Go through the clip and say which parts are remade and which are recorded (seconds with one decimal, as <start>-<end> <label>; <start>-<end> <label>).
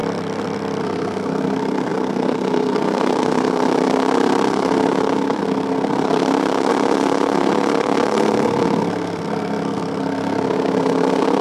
0.0-0.8 recorded; 0.8-11.4 remade